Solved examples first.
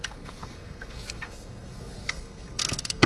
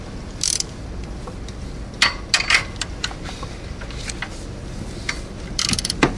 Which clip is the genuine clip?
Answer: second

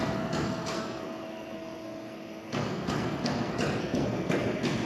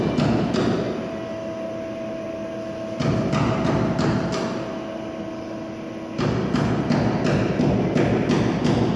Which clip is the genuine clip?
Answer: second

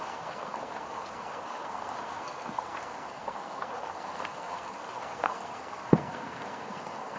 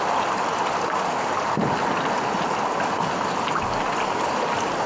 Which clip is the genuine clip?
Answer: second